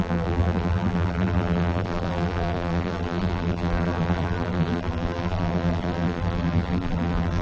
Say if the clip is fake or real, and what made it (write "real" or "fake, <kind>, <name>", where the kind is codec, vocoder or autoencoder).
fake, vocoder, BigVGAN v2